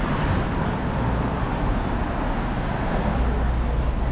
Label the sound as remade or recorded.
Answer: recorded